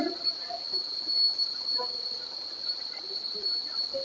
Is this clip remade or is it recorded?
recorded